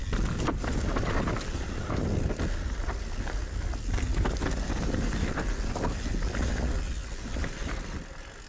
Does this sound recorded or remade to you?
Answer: recorded